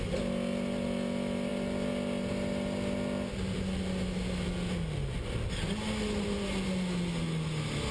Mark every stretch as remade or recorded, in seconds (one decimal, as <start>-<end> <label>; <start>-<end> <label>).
0.0-7.9 recorded